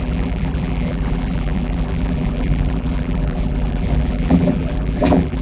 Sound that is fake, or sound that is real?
fake